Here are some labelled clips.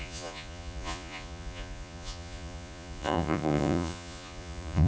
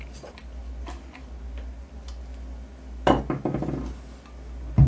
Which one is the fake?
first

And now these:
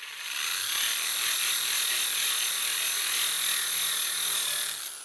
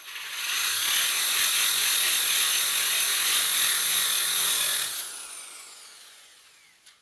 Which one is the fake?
second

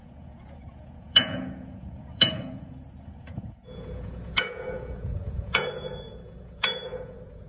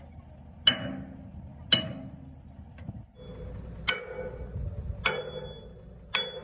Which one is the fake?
first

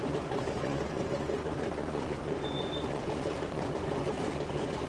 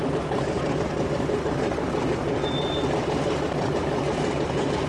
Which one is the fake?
first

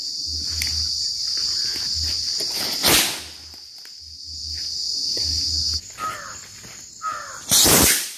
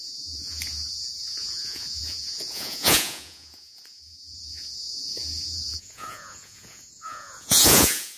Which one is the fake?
second